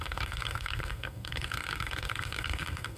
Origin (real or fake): fake